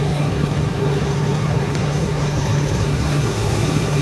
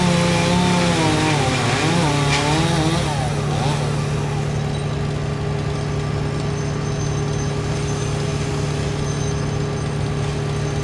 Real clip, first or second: second